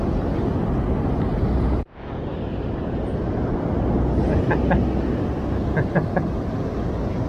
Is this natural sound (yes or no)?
yes